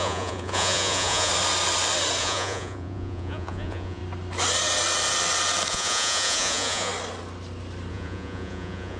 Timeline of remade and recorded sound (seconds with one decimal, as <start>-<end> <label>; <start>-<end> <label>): 0.0-1.3 remade; 1.3-2.2 recorded; 2.2-4.0 remade; 4.0-5.7 recorded; 5.7-6.9 remade; 6.9-7.9 recorded; 7.9-9.0 remade